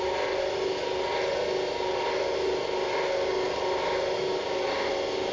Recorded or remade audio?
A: recorded